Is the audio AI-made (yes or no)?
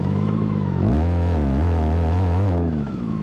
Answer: yes